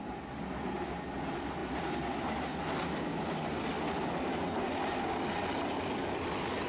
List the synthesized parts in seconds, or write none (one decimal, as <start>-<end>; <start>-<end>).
none